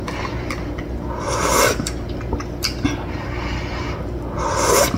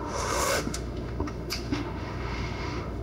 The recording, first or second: first